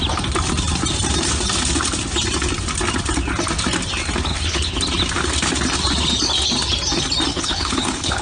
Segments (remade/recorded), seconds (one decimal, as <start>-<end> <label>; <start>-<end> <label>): 0.0-4.3 recorded; 4.3-4.8 remade; 4.8-7.3 recorded; 7.3-8.2 remade